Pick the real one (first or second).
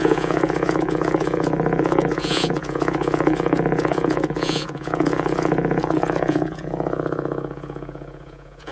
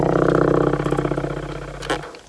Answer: second